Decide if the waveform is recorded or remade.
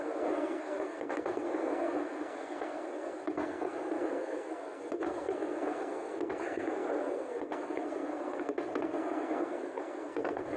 remade